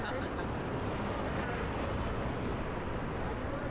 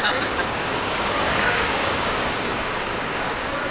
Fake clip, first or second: second